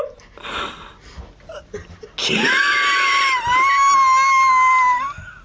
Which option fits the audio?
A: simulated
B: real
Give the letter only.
B